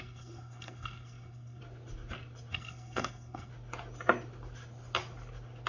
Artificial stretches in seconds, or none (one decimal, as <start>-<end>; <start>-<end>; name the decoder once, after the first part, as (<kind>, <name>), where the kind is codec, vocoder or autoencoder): 0.0-1.6 (codec, SNAC); 2.5-3.5